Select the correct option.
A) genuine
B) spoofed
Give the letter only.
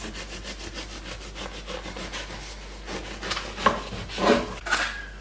A